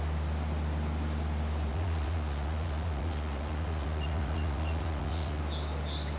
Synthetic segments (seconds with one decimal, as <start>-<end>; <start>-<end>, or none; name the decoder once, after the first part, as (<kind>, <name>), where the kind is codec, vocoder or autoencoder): 1.7-5.4 (vocoder, Vocos)